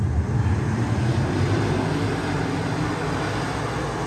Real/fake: real